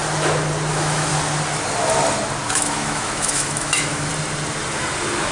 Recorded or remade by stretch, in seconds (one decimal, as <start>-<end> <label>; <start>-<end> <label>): 0.0-0.7 recorded; 0.7-1.1 remade; 1.1-2.5 recorded; 2.5-4.1 remade; 4.1-5.3 recorded